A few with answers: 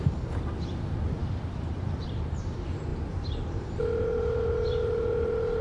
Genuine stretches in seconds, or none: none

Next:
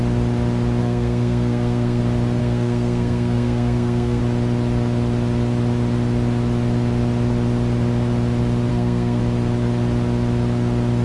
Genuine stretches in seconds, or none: 0.0-0.8; 2.0-2.4; 4.2-8.7; 9.2-11.0

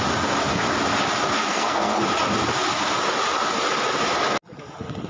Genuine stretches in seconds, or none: 0.0-1.5; 2.0-5.1

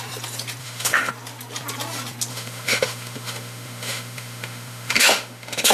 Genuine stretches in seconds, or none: 0.0-0.6; 1.1-2.3

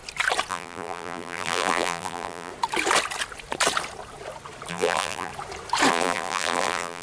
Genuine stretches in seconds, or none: 0.0-0.5; 2.5-4.7; 5.3-5.9

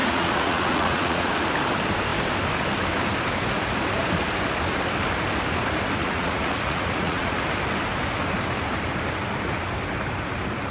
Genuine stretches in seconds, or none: 1.3-6.0; 7.4-10.7